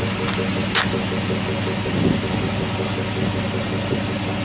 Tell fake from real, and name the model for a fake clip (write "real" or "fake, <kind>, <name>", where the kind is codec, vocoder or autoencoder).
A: real